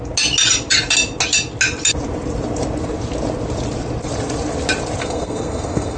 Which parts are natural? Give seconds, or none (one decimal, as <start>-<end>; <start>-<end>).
0.0-5.0